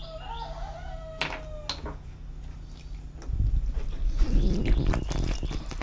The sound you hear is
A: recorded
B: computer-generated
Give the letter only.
A